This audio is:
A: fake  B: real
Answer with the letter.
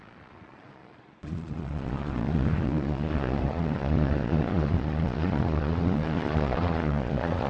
A